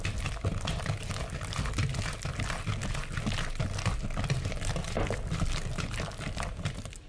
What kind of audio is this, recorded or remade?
recorded